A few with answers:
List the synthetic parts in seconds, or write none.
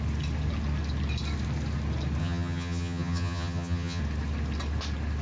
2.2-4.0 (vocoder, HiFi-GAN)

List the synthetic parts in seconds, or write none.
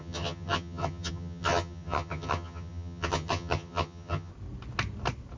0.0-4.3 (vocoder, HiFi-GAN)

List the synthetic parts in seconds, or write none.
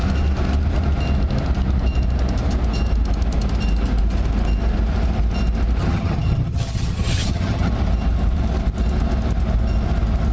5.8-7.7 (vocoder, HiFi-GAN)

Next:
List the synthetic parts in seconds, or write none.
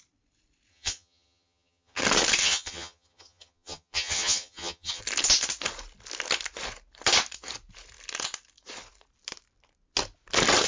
0.7-2.0 (vocoder, HiFi-GAN); 2.4-5.0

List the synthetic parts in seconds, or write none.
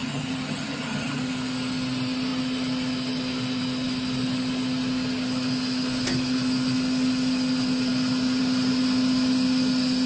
0.0-1.2 (vocoder, HiFi-GAN)